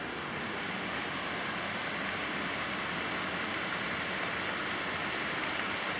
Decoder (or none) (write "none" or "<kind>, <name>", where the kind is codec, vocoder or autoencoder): none